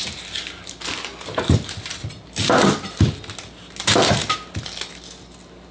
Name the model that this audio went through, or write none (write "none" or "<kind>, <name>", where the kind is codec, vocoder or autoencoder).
none